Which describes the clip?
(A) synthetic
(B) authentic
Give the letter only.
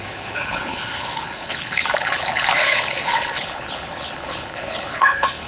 A